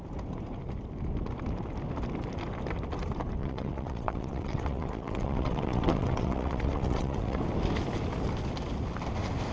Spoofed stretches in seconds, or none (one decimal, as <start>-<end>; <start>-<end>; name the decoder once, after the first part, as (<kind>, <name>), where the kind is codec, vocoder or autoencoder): 3.4-7.4 (vocoder, WaveNeXt)